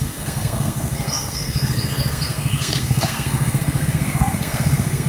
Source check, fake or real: fake